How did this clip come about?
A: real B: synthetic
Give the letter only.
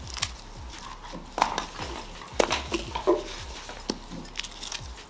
A